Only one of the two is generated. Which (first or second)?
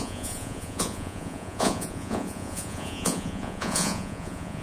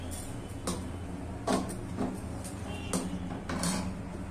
first